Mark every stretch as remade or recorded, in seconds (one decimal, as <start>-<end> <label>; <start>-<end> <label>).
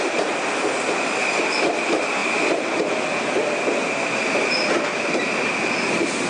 0.0-6.3 recorded